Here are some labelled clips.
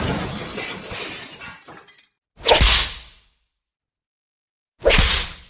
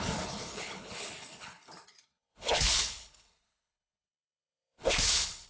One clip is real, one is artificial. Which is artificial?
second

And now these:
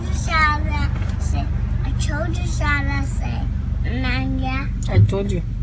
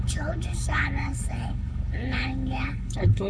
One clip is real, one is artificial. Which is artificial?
second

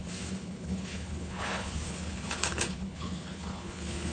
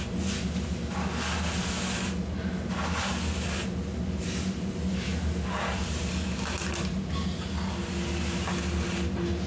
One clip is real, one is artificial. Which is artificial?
first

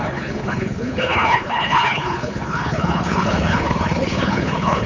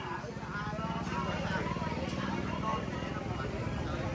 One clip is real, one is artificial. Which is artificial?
first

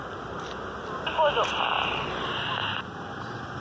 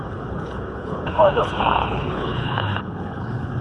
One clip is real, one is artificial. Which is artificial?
second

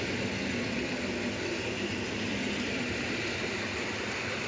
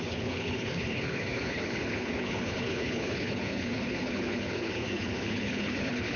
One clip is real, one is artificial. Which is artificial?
second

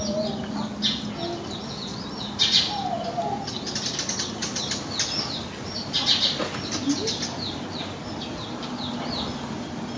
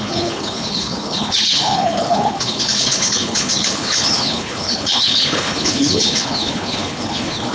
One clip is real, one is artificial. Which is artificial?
second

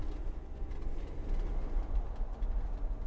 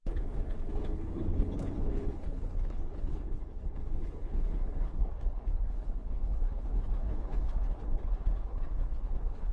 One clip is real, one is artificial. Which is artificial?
second